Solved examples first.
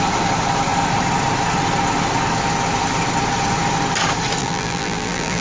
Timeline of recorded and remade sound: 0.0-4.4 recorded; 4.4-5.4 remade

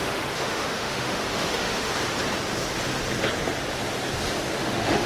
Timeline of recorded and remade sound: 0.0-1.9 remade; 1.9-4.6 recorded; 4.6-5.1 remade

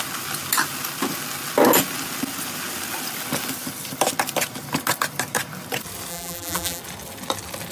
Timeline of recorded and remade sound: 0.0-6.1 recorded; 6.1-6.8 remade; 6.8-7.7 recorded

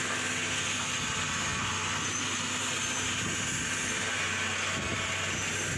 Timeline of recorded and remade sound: 0.0-5.8 recorded